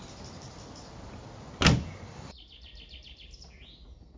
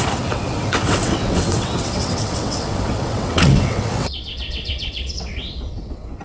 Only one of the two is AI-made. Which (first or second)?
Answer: second